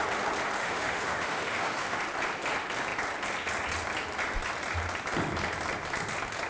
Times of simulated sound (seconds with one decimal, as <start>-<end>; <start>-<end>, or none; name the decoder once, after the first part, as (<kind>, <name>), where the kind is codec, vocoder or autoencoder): 0.6-2.0 (autoencoder, DAC-VAE)